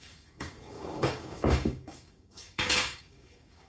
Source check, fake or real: fake